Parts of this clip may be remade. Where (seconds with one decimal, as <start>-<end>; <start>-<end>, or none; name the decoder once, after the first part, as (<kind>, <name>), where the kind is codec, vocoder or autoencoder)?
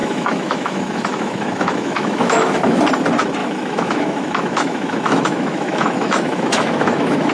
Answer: 0.0-2.8 (autoencoder, DAC-VAE); 3.4-7.3